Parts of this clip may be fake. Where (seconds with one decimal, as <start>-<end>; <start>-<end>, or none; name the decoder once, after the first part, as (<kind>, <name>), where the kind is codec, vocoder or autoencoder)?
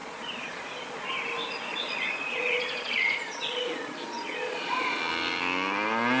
0.0-1.1 (vocoder, Vocos); 1.7-5.0